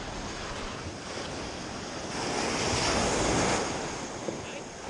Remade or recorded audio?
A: recorded